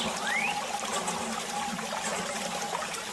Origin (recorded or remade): recorded